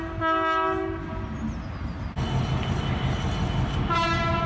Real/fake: real